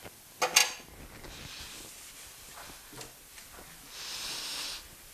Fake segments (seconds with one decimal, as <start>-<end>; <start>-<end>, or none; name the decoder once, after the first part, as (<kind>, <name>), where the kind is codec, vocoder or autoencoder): none